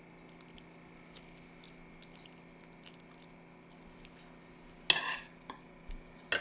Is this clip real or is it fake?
real